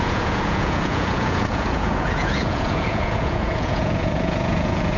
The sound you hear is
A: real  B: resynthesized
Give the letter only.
B